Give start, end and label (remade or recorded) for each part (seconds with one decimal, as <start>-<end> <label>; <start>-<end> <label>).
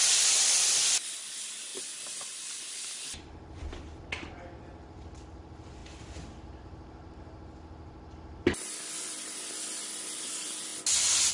0.0-11.3 recorded